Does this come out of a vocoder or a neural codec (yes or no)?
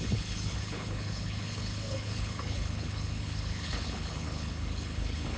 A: yes